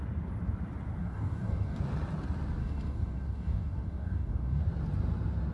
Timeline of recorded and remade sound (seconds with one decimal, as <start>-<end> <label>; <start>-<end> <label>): 0.0-1.0 recorded; 1.0-1.8 remade; 1.8-2.6 recorded; 2.6-4.6 remade; 4.6-5.5 recorded